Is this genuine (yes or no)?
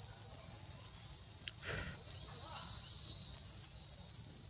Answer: yes